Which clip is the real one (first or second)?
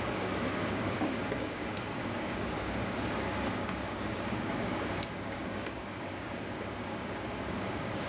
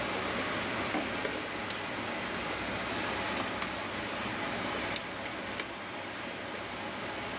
second